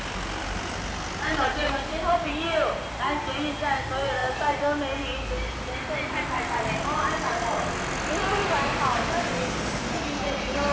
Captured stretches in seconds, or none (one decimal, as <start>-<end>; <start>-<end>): 0.0-10.7